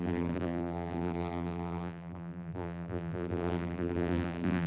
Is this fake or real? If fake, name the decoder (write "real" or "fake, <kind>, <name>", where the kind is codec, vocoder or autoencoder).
fake, vocoder, BigVGAN v2